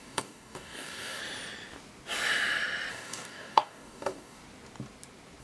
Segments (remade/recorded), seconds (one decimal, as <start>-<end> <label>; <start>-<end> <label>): 0.0-1.2 remade; 1.2-2.9 recorded; 2.9-4.4 remade; 4.4-5.4 recorded

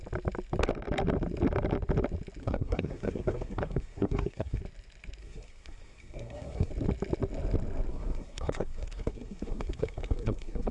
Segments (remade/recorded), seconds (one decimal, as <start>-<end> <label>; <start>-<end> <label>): 0.0-2.4 recorded; 2.4-4.6 remade; 4.6-5.2 recorded; 5.2-6.7 remade; 6.7-7.9 recorded; 7.9-10.7 remade

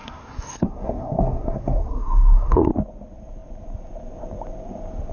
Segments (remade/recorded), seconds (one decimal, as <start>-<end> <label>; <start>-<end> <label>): 0.0-2.7 remade; 2.7-5.1 recorded